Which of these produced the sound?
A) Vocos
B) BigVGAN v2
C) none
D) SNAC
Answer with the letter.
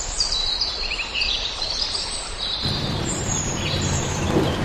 B